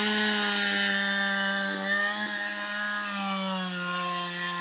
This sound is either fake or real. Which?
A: real